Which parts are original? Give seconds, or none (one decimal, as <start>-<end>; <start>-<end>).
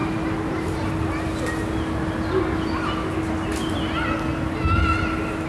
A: 0.0-5.5